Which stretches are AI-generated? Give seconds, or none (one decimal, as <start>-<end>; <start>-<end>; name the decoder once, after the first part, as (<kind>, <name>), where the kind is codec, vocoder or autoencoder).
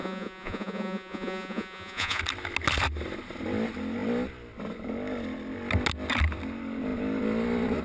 0.0-2.2 (vocoder, Vocos)